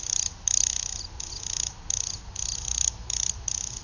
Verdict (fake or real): real